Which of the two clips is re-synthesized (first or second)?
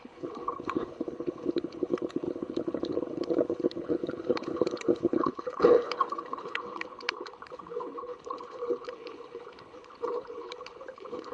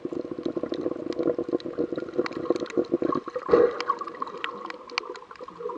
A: first